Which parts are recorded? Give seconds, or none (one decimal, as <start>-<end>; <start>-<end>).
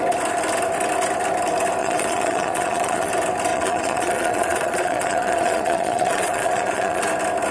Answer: 0.0-1.8; 3.1-3.5; 7.0-7.5